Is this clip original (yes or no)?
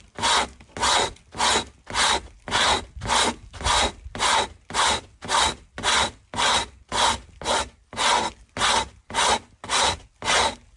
yes